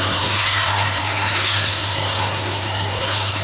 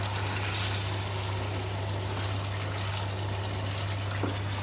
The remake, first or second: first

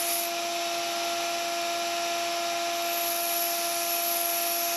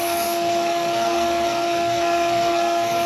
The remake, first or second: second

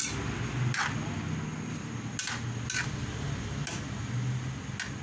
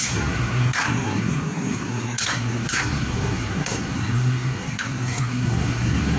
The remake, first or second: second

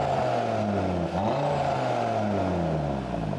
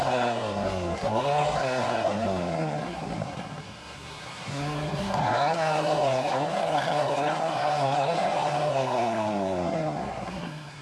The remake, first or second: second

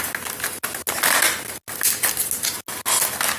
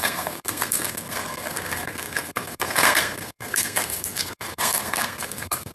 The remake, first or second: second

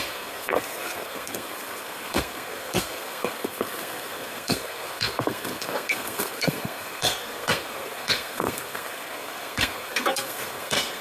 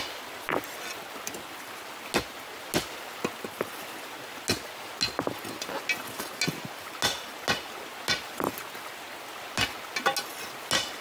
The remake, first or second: first